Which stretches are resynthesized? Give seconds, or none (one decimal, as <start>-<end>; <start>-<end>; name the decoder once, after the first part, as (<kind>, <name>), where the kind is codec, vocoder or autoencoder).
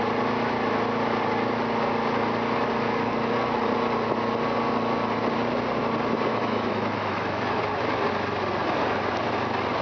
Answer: 6.3-7.6 (autoencoder, DAC-VAE)